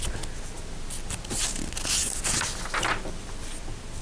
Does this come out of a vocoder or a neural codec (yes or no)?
no